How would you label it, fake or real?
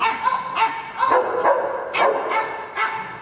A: real